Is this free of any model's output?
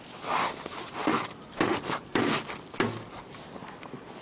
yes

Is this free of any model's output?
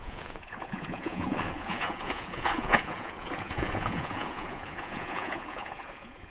no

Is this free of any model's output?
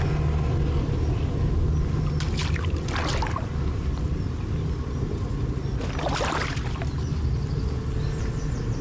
yes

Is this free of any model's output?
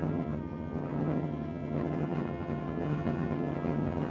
no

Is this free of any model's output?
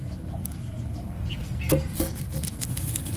no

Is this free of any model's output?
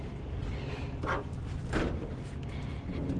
yes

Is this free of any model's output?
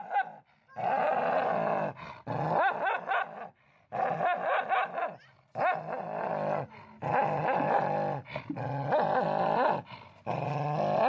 yes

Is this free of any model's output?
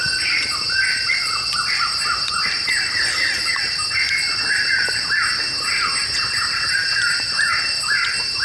yes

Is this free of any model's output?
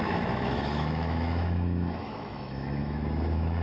no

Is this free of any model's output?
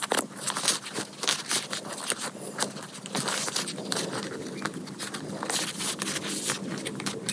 yes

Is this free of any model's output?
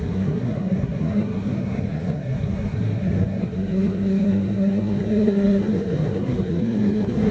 no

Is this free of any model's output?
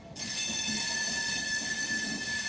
yes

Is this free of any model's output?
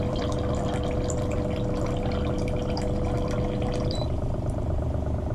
no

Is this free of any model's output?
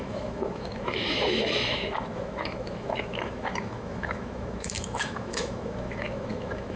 no